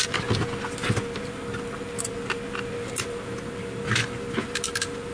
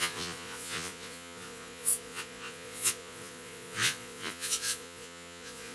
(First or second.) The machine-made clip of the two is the second